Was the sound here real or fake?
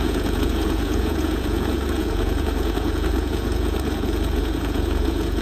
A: fake